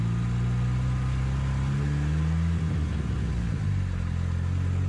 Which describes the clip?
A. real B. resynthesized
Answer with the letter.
A